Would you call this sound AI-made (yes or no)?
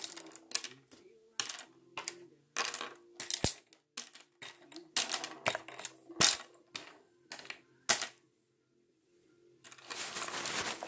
no